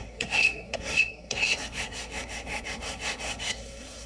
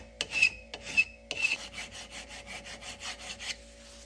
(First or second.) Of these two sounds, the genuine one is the second